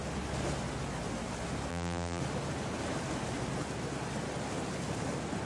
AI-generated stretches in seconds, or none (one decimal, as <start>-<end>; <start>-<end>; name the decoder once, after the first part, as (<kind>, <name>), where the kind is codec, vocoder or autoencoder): 1.7-2.2 (vocoder, BigVGAN v2)